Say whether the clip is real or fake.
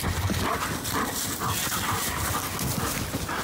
real